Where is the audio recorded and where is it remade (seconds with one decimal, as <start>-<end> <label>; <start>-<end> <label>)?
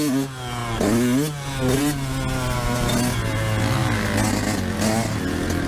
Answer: 0.0-5.7 recorded